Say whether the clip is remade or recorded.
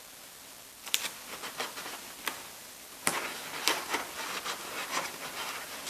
recorded